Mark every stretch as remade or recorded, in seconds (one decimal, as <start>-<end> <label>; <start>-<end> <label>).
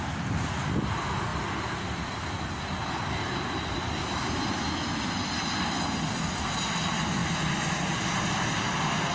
0.0-9.1 recorded